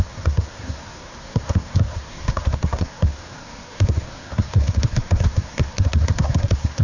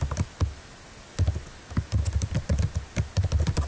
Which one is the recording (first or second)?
second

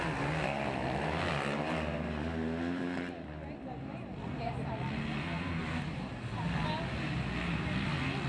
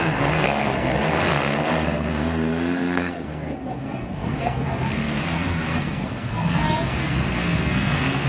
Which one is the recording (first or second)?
first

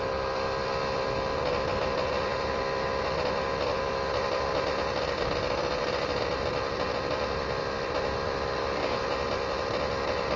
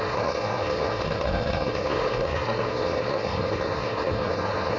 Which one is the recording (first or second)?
first